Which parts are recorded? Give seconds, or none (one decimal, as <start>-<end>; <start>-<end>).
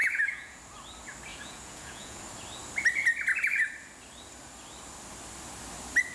0.6-1.3; 2.2-6.1